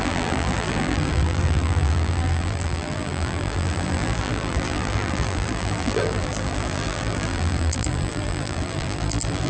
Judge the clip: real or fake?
fake